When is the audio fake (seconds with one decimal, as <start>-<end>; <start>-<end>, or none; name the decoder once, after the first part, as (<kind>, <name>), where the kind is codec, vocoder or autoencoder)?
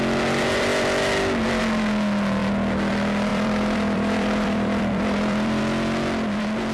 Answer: 3.3-5.6 (vocoder, BigVGAN v2)